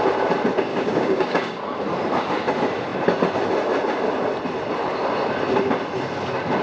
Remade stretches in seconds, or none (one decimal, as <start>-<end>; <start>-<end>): 0.7-1.6

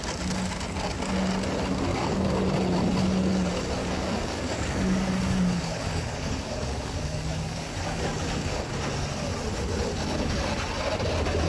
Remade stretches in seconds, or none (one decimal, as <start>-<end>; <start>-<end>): 1.9-2.4; 3.8-8.7

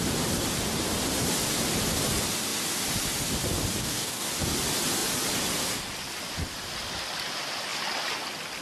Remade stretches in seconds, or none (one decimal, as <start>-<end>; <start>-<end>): 3.8-4.3